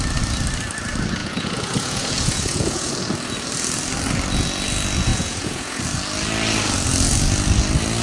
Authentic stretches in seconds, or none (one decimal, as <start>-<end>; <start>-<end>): 0.0-1.2; 2.9-5.1; 5.8-8.0